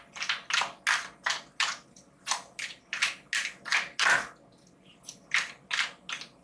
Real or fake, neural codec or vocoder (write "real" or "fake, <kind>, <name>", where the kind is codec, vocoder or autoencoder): real